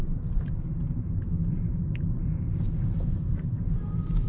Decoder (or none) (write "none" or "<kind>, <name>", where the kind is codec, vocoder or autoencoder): vocoder, BigVGAN v2